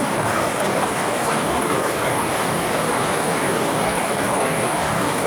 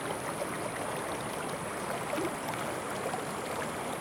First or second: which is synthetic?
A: first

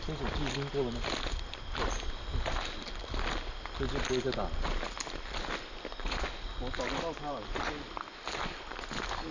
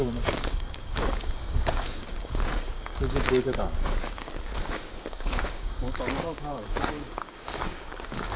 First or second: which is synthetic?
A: second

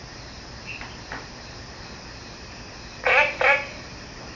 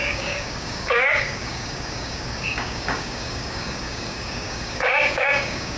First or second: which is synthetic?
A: second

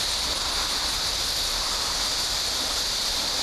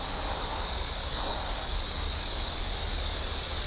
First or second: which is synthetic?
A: second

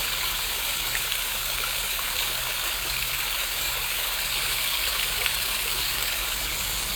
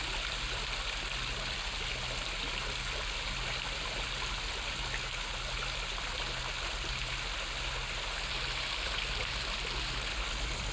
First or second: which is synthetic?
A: first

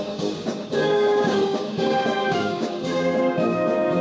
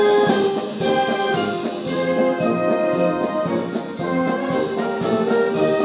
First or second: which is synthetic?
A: first